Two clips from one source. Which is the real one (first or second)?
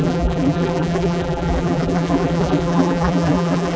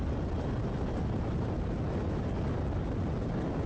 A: second